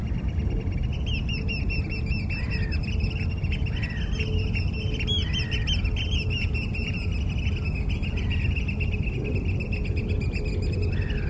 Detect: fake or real real